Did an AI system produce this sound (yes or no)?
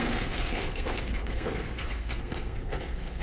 yes